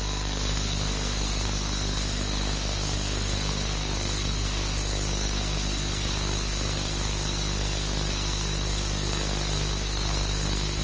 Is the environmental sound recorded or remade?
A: remade